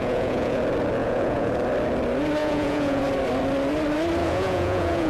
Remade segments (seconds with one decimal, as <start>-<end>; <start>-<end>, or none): 0.0-0.6; 1.0-1.5; 2.4-3.0; 4.2-5.1